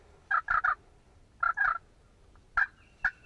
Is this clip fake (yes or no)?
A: no